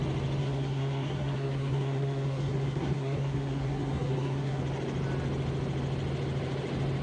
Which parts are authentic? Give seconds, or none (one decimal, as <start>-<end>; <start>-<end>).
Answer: 0.0-0.4; 4.6-7.0